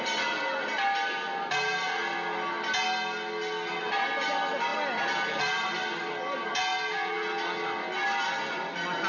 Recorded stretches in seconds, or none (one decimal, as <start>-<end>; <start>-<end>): 0.0-9.1